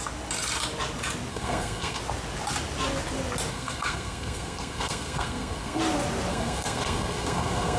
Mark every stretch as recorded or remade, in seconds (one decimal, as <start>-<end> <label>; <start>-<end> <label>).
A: 0.0-1.3 recorded; 1.3-2.0 remade; 2.0-3.5 recorded; 3.5-5.8 remade; 5.8-6.3 recorded; 6.3-7.8 remade